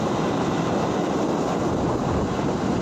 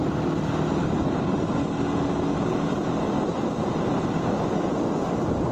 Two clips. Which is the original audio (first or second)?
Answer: second